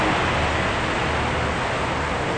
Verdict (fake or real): real